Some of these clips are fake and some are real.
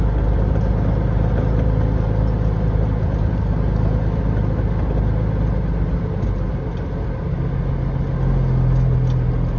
real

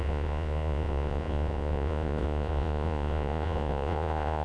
fake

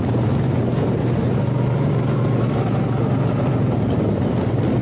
real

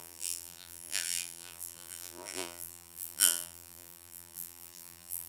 fake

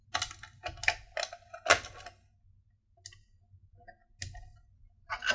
real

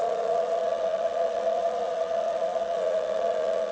fake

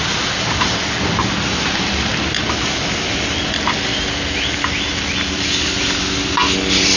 real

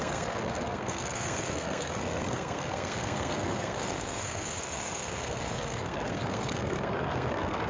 fake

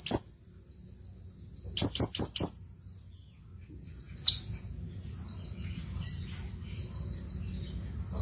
real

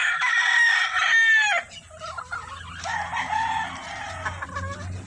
real